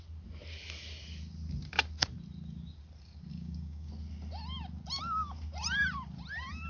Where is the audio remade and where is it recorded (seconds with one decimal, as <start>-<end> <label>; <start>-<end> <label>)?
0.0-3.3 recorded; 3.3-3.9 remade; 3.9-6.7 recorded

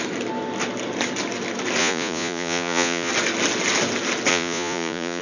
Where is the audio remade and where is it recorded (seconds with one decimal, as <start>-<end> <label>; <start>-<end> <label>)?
0.0-1.8 recorded; 1.8-3.1 remade; 3.1-4.3 recorded; 4.3-5.2 remade

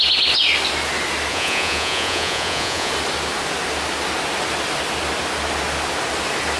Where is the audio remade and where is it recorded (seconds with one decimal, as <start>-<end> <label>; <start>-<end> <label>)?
0.0-1.3 recorded; 1.3-2.9 remade; 2.9-6.6 recorded

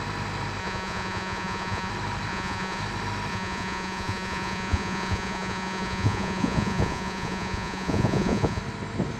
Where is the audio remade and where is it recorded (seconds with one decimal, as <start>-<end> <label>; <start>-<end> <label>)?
0.0-0.6 recorded; 0.6-1.9 remade; 1.9-2.3 recorded; 2.3-2.8 remade; 2.8-3.3 recorded; 3.3-8.6 remade; 8.6-9.2 recorded

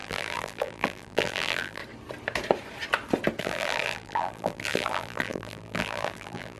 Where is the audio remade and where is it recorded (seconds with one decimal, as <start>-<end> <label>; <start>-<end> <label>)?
0.0-1.8 remade; 1.8-3.4 recorded; 3.4-6.6 remade